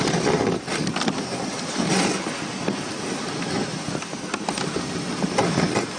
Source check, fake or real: real